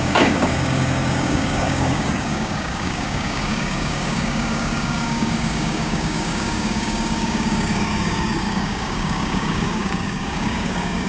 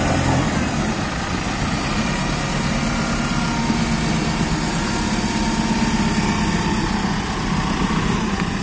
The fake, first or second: first